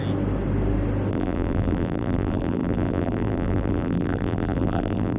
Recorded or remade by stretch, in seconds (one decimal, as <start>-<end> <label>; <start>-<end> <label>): 0.0-1.1 recorded; 1.1-5.2 remade